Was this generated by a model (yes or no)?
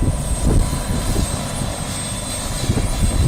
no